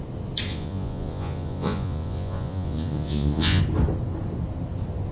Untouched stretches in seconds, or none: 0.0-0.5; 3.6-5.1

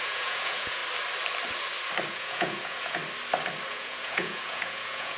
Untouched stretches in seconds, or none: 0.8-2.1; 3.0-3.7

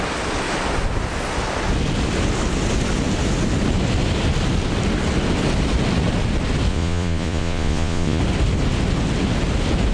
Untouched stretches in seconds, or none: 0.0-6.7; 8.2-9.9